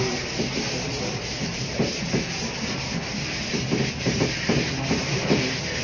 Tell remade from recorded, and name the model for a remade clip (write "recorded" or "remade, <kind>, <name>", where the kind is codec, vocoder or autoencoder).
recorded